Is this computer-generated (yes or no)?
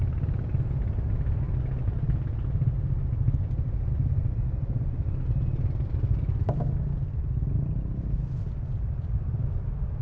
no